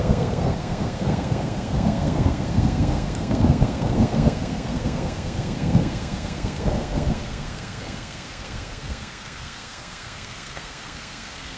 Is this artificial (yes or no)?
yes